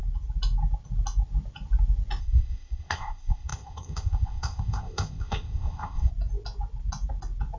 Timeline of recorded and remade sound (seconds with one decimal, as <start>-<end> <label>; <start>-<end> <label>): 0.0-2.2 recorded; 2.2-6.1 remade; 6.1-7.6 recorded